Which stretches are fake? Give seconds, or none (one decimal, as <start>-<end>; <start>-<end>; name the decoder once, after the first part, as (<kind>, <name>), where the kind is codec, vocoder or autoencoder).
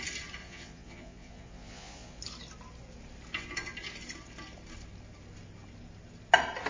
0.4-2.2 (vocoder, Vocos)